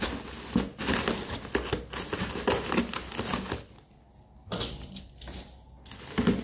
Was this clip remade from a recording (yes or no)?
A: no